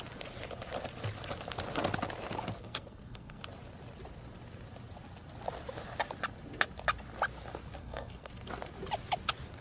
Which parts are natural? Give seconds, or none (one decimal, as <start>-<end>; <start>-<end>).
0.0-2.6; 3.4-7.8; 8.3-9.6